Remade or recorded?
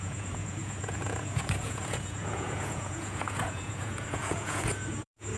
remade